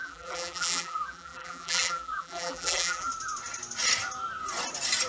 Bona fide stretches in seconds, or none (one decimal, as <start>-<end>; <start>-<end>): 3.1-5.1